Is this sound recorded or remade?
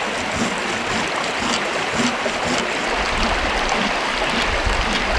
recorded